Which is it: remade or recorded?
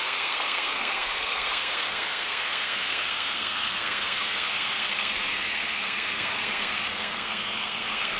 remade